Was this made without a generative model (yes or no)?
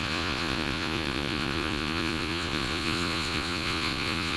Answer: no